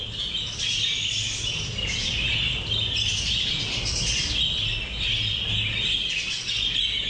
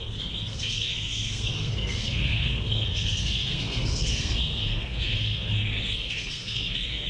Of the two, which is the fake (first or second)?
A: second